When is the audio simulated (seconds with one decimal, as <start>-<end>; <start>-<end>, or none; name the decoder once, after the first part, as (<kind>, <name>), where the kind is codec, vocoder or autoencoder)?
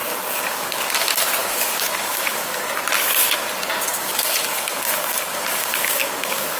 0.0-0.9 (codec, DAC); 1.4-2.7; 3.9-6.6